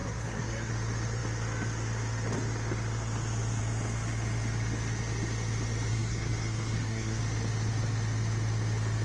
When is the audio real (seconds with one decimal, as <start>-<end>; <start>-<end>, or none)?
0.7-5.9; 7.2-9.0